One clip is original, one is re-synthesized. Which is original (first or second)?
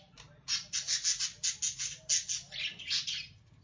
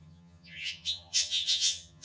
first